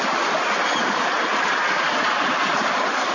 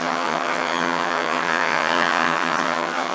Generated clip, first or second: second